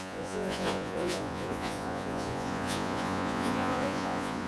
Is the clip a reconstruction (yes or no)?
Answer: yes